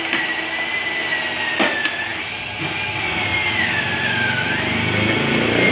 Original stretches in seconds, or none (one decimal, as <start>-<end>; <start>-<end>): 0.0-5.7